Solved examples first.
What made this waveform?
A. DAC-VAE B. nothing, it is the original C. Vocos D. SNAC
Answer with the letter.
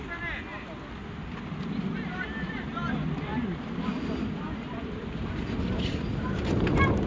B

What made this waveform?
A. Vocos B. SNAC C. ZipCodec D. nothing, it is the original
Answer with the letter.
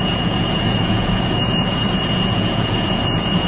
A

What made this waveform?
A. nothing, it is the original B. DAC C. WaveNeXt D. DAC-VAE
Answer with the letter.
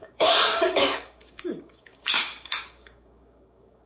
B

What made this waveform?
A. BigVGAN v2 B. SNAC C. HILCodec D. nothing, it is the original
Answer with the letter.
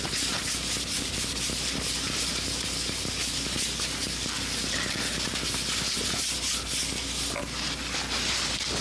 D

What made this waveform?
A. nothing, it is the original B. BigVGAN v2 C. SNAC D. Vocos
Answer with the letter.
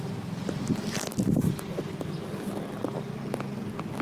A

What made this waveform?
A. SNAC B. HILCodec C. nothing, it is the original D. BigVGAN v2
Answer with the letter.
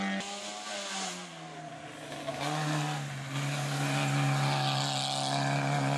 C